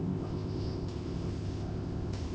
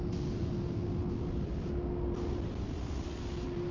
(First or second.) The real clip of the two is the second